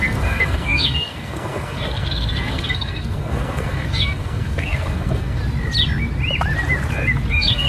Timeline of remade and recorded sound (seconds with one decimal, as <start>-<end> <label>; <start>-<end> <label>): 0.0-5.4 remade; 5.4-7.3 recorded; 7.3-7.7 remade